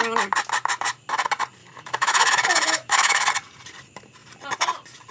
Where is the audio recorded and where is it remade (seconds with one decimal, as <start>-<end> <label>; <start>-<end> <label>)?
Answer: 0.0-1.6 recorded; 1.6-3.3 remade; 3.3-5.1 recorded